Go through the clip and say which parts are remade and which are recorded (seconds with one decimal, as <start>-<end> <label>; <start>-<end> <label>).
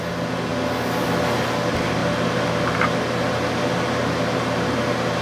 0.0-5.2 recorded